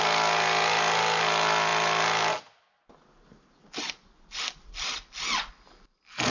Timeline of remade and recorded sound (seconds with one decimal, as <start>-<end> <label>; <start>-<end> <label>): 0.0-6.3 recorded